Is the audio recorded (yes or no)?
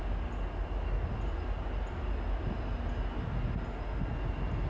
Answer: yes